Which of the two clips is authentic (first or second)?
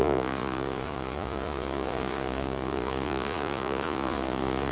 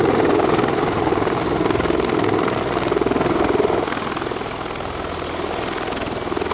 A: second